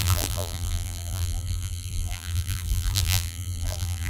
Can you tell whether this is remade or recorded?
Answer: remade